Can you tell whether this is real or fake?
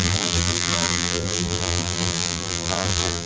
fake